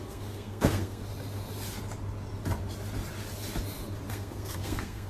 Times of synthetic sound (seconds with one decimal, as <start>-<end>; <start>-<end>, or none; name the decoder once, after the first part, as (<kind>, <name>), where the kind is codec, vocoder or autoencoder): 0.0-1.0 (codec, SNAC); 4.1-5.1